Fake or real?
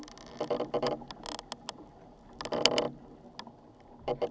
real